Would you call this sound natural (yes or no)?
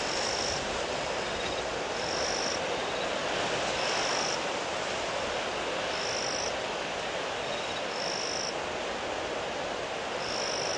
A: yes